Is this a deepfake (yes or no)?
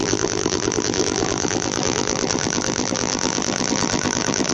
yes